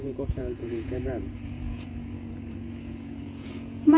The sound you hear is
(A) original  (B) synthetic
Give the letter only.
B